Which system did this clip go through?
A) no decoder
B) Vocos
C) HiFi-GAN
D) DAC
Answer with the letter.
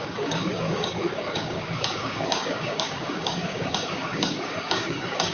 D